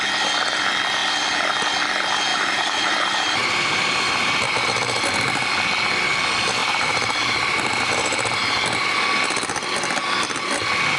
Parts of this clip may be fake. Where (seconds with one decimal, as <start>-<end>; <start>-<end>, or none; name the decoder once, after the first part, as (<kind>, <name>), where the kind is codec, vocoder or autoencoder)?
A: 2.3-5.0 (vocoder, BigVGAN v2); 6.6-9.0